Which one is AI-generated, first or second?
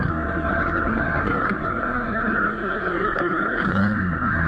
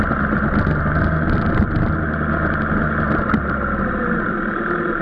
first